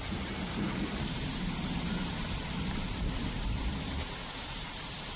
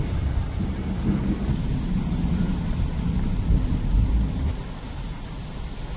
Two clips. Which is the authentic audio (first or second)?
second